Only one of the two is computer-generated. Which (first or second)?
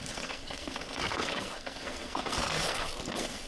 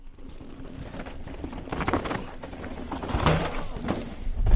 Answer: first